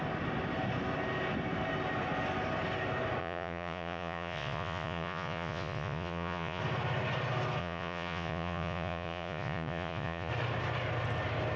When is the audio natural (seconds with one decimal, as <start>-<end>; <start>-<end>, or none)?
0.0-3.2; 6.6-7.6; 10.3-11.6